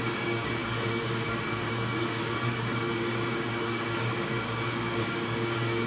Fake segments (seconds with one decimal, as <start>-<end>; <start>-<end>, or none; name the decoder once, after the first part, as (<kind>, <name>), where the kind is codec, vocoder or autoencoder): 0.0-5.9 (codec, DAC)